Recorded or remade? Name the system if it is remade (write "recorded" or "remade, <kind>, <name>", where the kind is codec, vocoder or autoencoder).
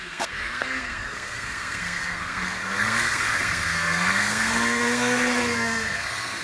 remade, codec, SNAC